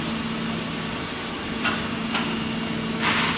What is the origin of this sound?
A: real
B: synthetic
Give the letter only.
A